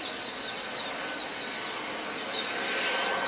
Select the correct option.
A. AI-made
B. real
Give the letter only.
B